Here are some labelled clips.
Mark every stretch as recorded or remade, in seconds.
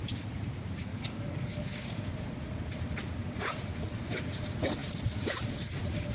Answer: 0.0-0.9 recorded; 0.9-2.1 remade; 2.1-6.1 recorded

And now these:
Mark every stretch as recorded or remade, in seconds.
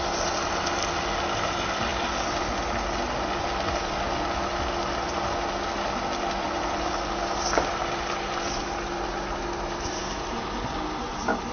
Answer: 0.0-11.5 recorded